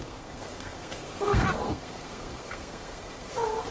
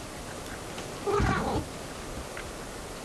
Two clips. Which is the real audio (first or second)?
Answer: second